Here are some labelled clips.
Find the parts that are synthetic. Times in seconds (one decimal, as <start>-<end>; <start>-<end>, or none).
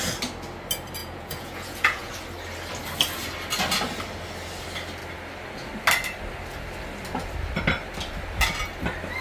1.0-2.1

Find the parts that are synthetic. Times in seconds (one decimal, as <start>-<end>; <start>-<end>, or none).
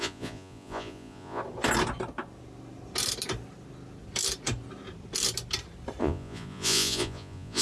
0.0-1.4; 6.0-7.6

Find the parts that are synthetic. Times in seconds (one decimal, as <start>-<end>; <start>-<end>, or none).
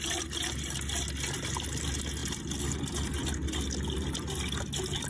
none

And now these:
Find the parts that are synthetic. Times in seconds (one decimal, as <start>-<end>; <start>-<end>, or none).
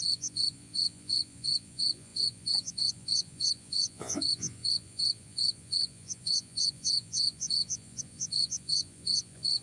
0.0-9.6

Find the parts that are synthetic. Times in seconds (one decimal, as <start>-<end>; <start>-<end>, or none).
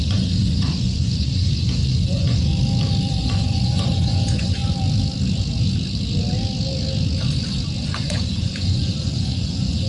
0.0-2.5; 3.1-4.6; 7.8-9.9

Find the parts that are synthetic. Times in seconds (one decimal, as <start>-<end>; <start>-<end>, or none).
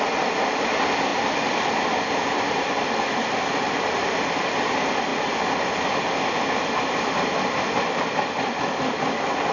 none